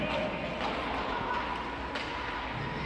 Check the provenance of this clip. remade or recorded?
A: recorded